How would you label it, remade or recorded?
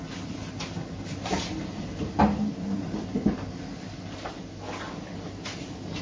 recorded